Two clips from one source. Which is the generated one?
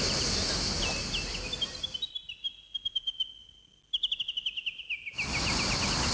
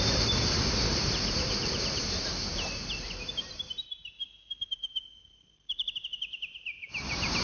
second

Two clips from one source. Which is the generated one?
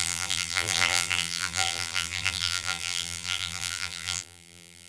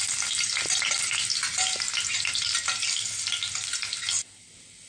first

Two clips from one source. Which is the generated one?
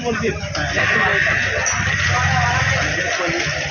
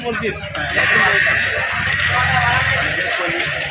first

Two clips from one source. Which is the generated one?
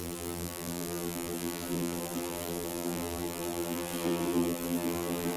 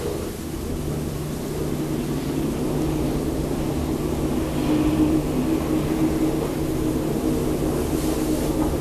first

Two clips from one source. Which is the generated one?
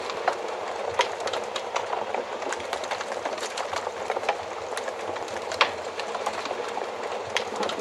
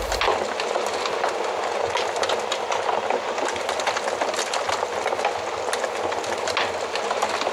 first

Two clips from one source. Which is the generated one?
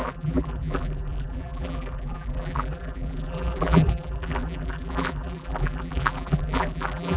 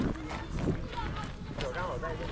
first